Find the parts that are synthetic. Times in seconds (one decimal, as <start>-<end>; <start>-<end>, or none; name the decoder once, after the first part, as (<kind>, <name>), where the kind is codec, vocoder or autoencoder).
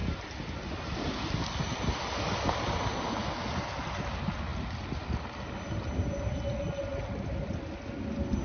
none